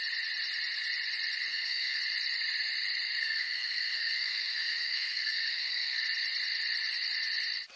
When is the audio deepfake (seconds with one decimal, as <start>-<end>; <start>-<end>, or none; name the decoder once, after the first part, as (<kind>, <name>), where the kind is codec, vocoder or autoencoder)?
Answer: 1.5-2.0 (codec, SNAC); 3.2-6.0